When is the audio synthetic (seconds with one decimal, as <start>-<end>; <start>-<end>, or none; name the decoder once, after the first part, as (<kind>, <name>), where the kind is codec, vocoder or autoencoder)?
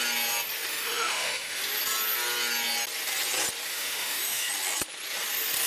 0.7-1.6 (autoencoder, DAC-VAE); 3.7-4.5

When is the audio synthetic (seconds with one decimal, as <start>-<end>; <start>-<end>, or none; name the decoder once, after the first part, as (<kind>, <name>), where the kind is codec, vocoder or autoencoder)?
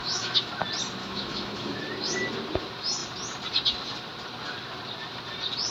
0.0-0.5 (autoencoder, DAC-VAE); 1.0-1.8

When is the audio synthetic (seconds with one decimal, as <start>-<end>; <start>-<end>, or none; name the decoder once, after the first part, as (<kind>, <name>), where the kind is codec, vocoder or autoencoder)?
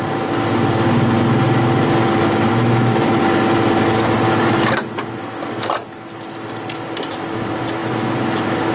2.6-3.2 (autoencoder, DAC-VAE); 7.8-8.7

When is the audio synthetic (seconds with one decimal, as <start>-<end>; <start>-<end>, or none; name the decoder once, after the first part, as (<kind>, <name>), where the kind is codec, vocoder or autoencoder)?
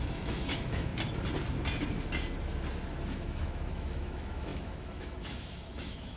0.0-0.9 (autoencoder, DAC-VAE); 3.0-6.2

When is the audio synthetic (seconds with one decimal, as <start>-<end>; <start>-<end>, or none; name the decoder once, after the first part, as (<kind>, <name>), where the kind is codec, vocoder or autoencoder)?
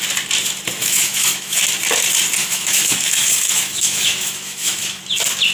0.8-1.6 (autoencoder, DAC-VAE); 2.4-5.0